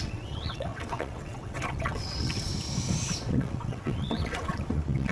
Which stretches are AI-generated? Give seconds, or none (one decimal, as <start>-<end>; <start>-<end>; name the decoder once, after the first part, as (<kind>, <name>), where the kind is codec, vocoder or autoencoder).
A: 0.0-2.5 (vocoder, WaveNeXt); 3.3-5.1